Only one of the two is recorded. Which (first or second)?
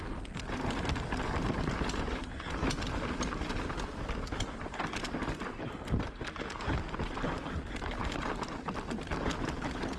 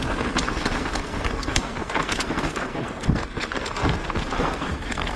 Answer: first